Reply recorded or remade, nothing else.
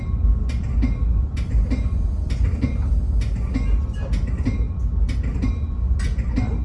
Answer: recorded